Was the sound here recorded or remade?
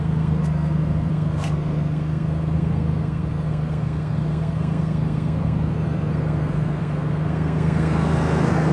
remade